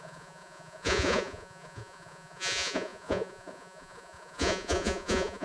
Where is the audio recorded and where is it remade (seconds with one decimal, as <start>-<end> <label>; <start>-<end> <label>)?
0.0-5.4 remade